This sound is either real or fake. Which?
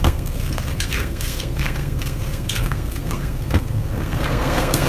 fake